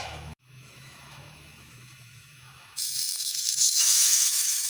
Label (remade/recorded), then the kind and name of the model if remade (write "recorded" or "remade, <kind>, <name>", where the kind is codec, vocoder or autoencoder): remade, autoencoder, DAC-VAE